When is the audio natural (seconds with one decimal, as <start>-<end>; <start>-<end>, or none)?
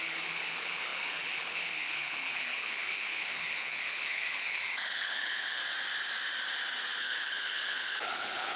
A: 5.6-7.0